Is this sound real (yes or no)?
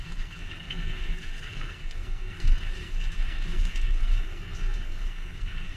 no